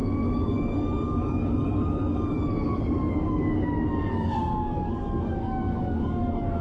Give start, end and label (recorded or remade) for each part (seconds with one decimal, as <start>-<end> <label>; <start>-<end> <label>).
0.0-6.6 remade